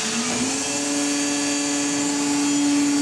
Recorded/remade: recorded